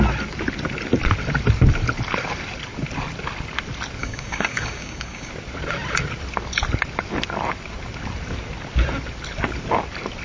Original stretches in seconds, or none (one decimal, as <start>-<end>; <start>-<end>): 0.0-4.0; 5.3-10.2